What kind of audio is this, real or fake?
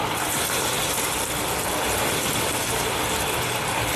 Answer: real